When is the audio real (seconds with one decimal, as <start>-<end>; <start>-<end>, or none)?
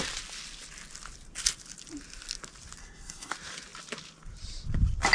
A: 0.0-2.8; 3.3-5.1